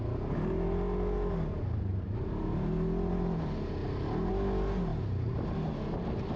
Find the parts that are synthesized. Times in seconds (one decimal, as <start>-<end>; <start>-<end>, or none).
none